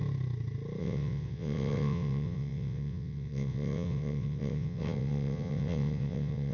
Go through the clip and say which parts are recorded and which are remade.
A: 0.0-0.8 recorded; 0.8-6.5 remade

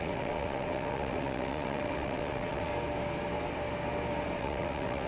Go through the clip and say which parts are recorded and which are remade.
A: 0.0-2.7 remade; 2.7-4.4 recorded; 4.4-5.1 remade